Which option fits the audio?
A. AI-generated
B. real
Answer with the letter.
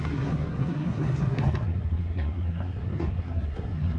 A